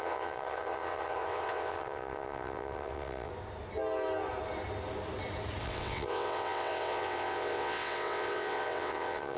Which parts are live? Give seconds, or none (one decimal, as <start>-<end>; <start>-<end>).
3.3-5.6